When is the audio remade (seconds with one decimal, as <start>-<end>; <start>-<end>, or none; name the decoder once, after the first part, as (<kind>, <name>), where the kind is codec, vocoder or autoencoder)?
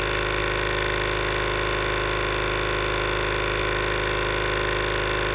none